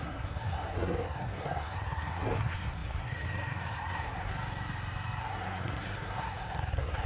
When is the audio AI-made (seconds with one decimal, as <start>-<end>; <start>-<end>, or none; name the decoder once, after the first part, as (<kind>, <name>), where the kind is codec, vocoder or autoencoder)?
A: 0.0-4.3 (codec, SNAC); 5.2-7.1

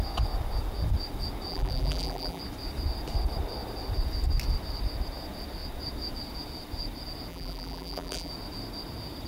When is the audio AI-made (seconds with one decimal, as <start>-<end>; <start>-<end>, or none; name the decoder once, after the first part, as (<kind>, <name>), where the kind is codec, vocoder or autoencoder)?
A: 1.5-2.4 (vocoder, BigVGAN v2); 7.3-8.3